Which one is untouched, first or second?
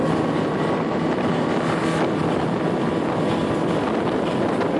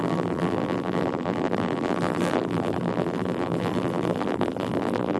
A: first